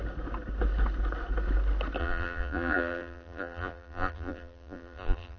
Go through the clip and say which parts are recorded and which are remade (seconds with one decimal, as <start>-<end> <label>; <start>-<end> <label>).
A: 0.0-2.0 recorded; 2.0-5.4 remade